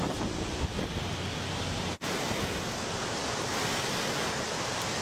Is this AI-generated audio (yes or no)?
no